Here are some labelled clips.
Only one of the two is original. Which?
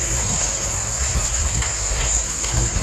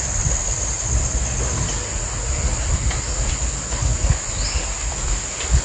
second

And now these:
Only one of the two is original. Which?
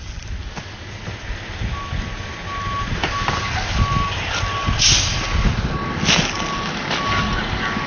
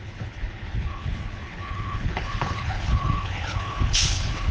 first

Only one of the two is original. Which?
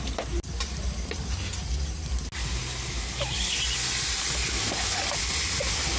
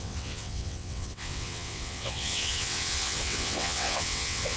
first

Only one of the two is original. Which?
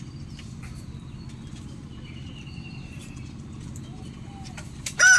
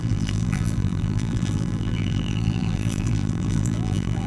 first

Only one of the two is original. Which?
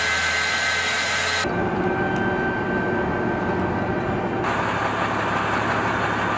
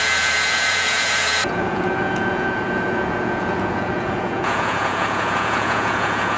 first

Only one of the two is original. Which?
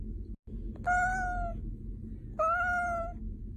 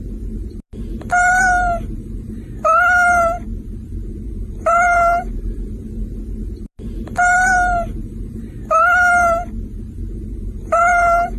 first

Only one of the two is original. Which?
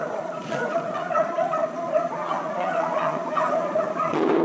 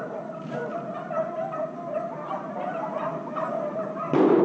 second